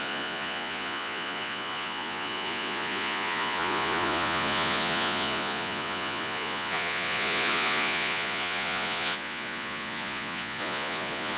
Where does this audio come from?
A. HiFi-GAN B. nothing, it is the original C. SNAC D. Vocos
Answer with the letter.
D